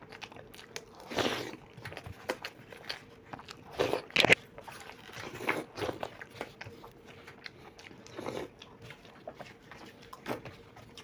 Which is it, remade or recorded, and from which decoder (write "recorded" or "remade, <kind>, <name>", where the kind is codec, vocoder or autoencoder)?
recorded